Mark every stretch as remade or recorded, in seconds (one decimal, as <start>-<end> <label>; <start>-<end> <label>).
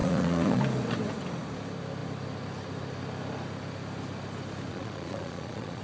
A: 0.0-0.6 remade; 0.6-4.7 recorded; 4.7-5.8 remade